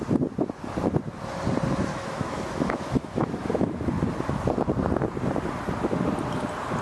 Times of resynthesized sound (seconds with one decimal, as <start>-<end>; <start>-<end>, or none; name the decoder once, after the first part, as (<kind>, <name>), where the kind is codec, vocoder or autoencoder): 1.9-3.9 (autoencoder, DAC-VAE)